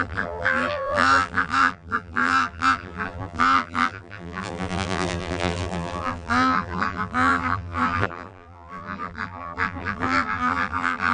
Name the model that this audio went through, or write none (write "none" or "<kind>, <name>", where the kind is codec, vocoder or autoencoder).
vocoder, BigVGAN v2